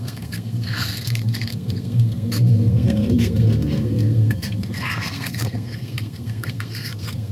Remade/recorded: remade